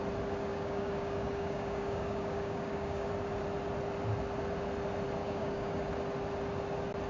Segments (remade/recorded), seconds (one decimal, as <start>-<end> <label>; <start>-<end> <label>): 0.0-0.5 recorded; 0.5-3.1 remade; 3.1-5.2 recorded; 5.2-5.9 remade; 5.9-7.1 recorded